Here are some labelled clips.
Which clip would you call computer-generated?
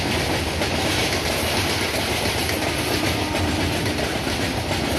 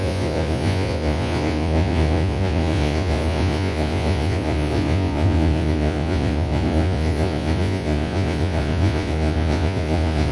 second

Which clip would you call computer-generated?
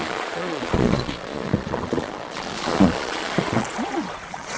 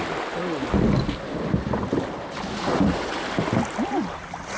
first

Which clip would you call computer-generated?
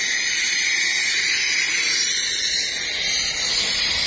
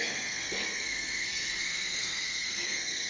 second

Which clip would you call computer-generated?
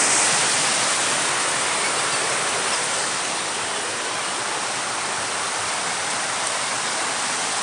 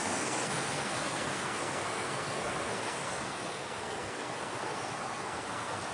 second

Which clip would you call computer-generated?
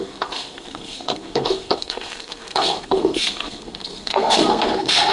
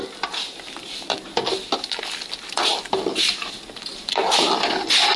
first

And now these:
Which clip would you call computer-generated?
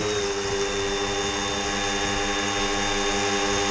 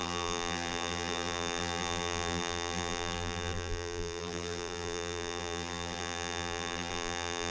second